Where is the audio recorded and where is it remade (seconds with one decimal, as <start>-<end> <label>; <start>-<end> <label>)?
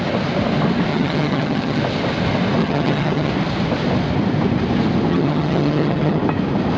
0.0-0.9 recorded; 0.9-1.8 remade; 1.8-2.6 recorded; 2.6-3.3 remade; 3.3-5.1 recorded; 5.1-6.2 remade; 6.2-6.8 recorded